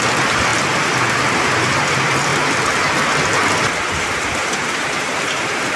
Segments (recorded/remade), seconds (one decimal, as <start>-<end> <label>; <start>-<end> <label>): 0.0-2.3 remade; 2.3-3.6 recorded; 3.6-5.8 remade